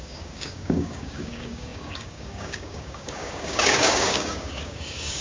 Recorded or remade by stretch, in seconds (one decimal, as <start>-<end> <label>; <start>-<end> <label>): 0.0-5.2 remade